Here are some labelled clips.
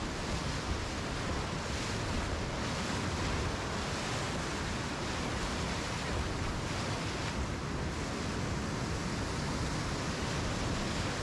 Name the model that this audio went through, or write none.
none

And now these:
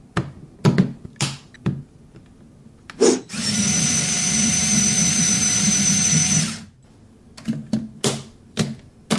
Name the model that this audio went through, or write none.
none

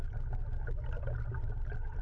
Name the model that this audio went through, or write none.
none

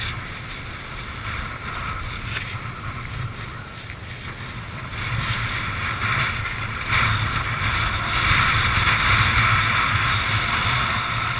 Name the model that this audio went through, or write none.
none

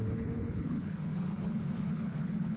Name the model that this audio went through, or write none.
codec, HILCodec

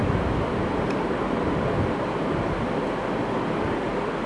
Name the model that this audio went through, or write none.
none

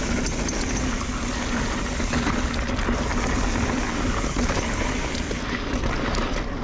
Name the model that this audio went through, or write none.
none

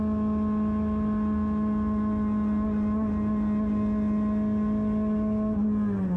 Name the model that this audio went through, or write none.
none